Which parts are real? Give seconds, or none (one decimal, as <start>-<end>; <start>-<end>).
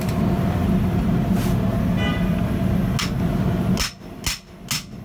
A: 0.0-5.0